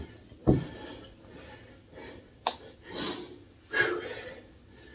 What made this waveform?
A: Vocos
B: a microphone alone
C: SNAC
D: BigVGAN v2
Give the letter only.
B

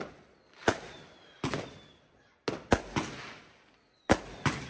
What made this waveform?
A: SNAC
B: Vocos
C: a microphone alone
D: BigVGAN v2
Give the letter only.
C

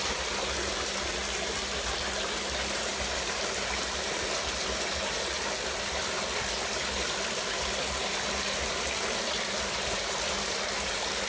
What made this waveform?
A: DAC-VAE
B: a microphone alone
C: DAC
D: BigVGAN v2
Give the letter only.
B